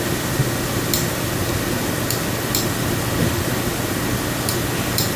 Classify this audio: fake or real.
real